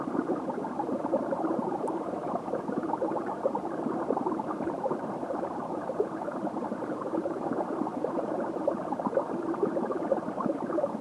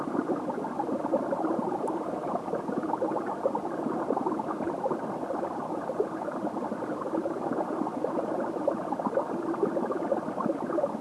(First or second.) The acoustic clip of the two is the second